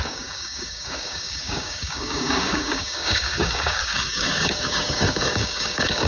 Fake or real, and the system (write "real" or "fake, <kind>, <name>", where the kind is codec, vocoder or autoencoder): fake, codec, DAC